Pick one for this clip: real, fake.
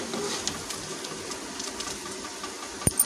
real